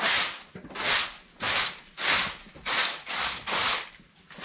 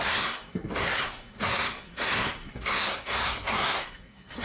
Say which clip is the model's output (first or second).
second